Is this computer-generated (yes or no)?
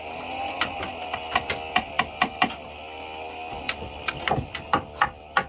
no